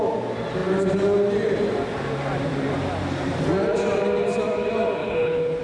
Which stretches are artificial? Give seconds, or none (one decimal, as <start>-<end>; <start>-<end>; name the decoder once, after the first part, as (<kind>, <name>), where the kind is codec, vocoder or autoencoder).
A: 5.0-5.6 (codec, HILCodec)